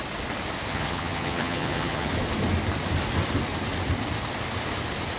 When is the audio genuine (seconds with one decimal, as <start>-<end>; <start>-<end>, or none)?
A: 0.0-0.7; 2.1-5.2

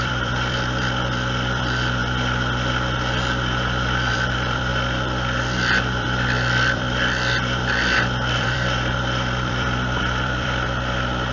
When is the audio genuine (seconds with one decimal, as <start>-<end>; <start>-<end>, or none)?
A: 2.0-4.1

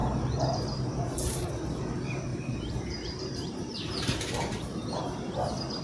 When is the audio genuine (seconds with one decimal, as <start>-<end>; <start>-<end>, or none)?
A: 1.5-2.3; 5.0-5.8

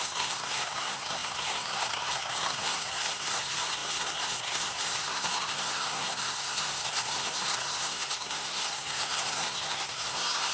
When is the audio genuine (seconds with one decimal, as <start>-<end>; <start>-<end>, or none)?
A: none